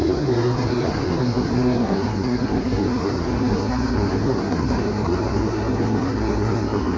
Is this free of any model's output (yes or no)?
no